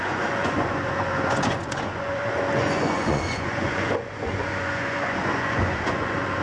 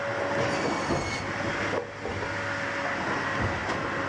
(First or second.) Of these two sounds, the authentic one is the second